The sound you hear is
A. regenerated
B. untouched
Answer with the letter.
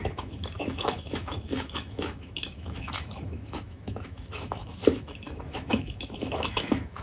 A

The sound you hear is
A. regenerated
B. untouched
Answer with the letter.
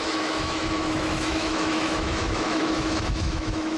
A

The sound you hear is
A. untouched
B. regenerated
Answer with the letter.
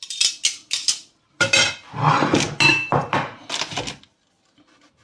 A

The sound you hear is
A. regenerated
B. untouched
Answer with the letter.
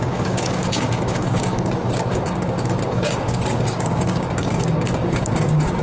A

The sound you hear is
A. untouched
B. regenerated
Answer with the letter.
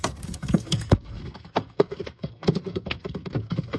B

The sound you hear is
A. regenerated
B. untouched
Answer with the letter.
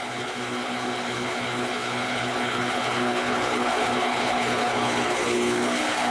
A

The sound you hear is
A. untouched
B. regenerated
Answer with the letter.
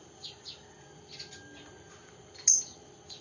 A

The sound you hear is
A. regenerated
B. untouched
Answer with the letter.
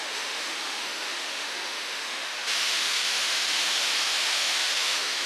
A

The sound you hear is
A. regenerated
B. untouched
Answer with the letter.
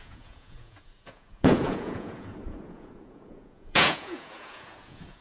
A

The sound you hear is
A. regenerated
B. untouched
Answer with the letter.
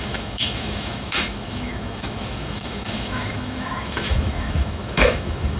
A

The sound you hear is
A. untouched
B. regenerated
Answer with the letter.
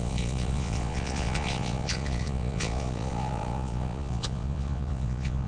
B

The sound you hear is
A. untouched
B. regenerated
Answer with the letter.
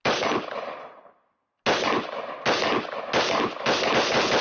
A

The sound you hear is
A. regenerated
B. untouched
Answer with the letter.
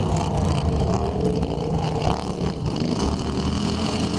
B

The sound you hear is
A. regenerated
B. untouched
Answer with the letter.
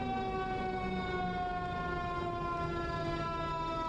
B